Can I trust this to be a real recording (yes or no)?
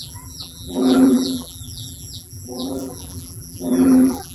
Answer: no